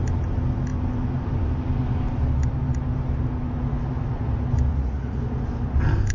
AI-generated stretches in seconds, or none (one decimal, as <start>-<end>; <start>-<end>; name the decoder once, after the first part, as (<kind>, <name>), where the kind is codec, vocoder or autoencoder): 4.7-5.2 (vocoder, Vocos)